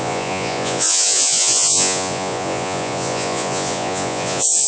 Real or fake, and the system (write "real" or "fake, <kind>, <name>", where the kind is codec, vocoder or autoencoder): fake, vocoder, Vocos